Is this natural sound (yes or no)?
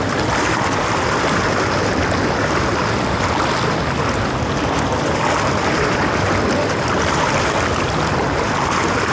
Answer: yes